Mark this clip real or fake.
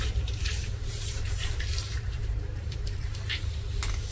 fake